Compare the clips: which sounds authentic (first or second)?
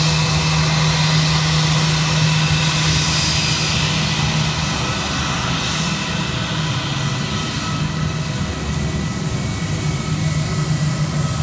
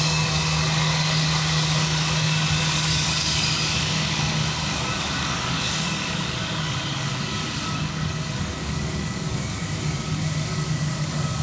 first